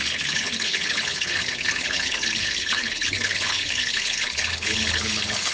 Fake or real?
fake